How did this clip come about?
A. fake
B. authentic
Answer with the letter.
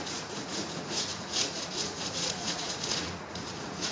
A